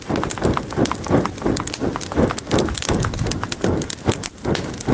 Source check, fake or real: real